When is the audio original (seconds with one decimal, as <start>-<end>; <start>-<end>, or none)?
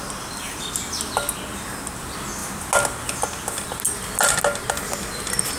0.0-5.6